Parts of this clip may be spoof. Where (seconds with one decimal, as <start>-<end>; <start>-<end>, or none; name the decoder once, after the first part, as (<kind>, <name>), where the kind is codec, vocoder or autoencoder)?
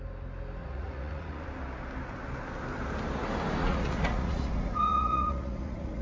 0.6-1.4 (vocoder, Vocos); 3.6-6.0